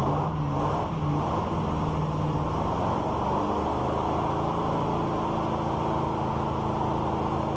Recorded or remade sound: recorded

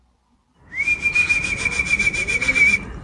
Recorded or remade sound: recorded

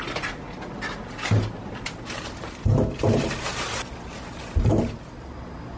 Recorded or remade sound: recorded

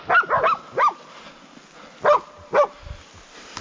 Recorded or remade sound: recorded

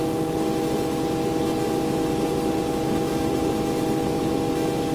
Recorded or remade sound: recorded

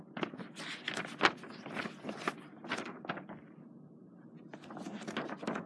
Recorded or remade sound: recorded